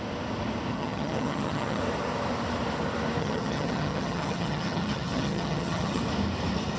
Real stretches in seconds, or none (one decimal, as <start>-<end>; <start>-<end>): 0.0-0.7; 1.8-3.2; 6.0-6.8